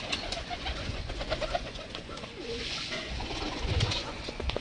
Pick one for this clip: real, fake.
fake